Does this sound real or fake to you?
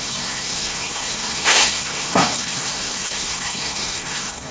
fake